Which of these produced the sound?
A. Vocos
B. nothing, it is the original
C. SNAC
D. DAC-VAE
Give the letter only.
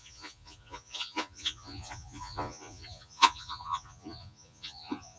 A